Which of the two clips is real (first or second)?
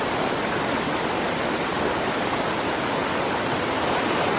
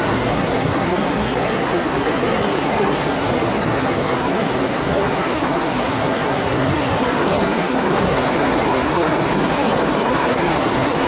first